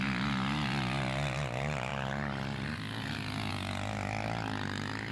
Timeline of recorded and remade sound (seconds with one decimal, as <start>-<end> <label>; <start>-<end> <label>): 0.0-5.1 recorded